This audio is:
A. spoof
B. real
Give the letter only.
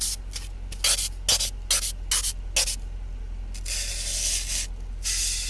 B